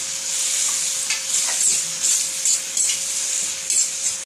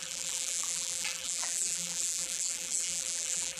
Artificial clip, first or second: second